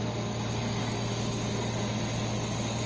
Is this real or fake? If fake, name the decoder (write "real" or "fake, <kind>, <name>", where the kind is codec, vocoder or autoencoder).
real